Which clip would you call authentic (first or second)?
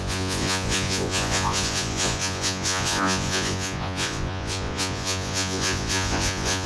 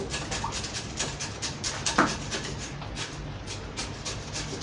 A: second